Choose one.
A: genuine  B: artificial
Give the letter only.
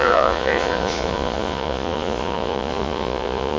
B